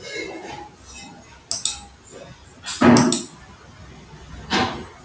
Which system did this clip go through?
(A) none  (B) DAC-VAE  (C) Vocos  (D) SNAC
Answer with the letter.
A